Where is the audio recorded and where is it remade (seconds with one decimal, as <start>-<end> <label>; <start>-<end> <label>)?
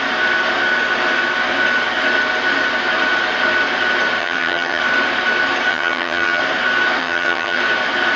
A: 0.0-4.2 recorded; 4.2-4.8 remade; 4.8-5.7 recorded; 5.7-6.4 remade; 6.4-7.0 recorded; 7.0-7.6 remade; 7.6-8.2 recorded